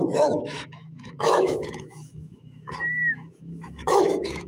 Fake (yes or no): yes